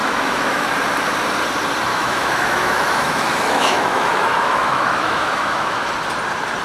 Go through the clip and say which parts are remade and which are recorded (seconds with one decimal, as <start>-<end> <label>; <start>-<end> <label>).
0.0-0.7 remade; 0.7-1.9 recorded; 1.9-5.9 remade; 5.9-6.6 recorded